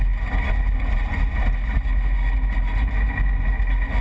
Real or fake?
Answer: real